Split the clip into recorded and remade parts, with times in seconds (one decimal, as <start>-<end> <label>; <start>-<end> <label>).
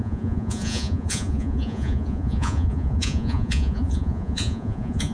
0.0-5.1 remade